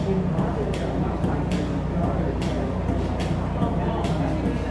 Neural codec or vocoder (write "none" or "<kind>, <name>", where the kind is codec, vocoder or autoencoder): none